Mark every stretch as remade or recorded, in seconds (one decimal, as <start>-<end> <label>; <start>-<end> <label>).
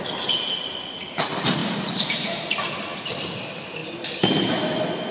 0.0-1.6 recorded; 1.6-2.4 remade; 2.4-5.1 recorded